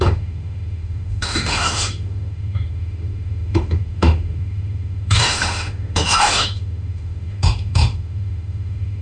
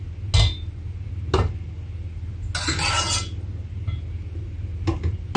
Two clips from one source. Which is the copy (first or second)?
first